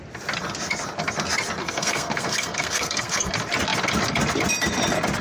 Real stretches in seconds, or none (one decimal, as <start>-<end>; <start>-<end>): 0.0-1.6; 3.3-5.2